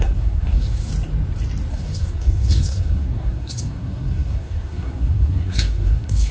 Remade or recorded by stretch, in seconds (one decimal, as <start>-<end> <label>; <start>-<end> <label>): 0.0-0.9 remade; 0.9-1.7 recorded; 1.7-6.3 remade